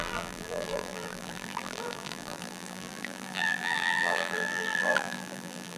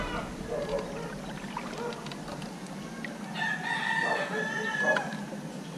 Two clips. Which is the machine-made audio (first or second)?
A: first